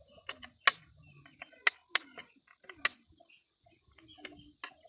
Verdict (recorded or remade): recorded